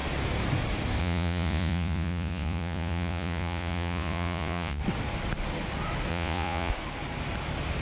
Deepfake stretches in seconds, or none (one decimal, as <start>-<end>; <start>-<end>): 1.0-4.8; 6.1-6.7